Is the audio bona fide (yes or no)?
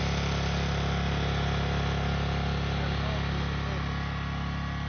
yes